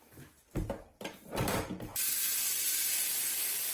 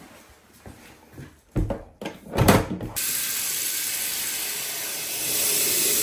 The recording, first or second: second